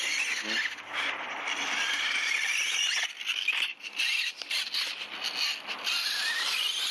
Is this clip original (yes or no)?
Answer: yes